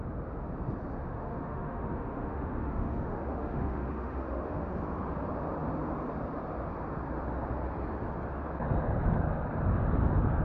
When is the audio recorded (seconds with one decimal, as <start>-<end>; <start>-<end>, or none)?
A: 0.0-1.1; 4.7-10.4